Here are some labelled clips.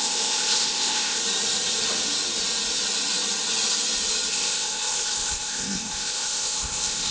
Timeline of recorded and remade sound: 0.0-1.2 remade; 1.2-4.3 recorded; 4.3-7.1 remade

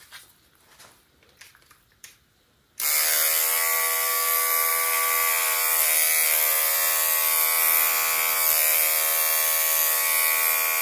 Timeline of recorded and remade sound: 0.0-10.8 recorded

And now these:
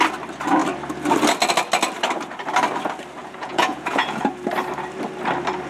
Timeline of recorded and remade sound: 0.0-3.2 recorded; 3.2-4.3 remade; 4.3-5.7 recorded

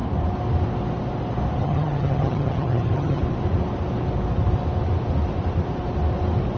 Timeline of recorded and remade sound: 0.0-1.6 recorded; 1.6-3.2 remade; 3.2-6.6 recorded

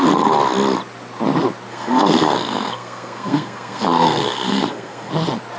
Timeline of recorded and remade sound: 0.0-1.7 recorded; 1.7-5.1 remade; 5.1-5.6 recorded

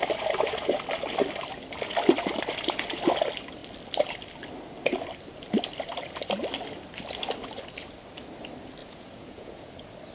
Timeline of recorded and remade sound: 0.0-8.8 recorded; 8.8-9.7 remade; 9.7-10.1 recorded

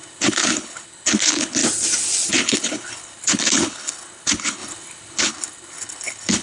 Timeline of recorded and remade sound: 0.0-1.6 remade; 1.6-2.3 recorded; 2.3-6.4 remade